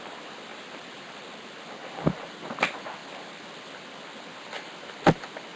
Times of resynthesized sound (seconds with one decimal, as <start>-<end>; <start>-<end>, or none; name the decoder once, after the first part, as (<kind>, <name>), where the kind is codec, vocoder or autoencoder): 0.5-1.1 (vocoder, BigVGAN v2); 1.8-2.3